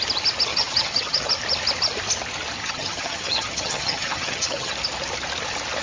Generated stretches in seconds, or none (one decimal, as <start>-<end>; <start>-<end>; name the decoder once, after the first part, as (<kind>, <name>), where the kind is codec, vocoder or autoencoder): 0.5-1.3 (vocoder, HiFi-GAN); 2.6-4.7